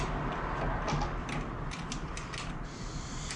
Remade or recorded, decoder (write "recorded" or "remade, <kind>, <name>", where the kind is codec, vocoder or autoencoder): recorded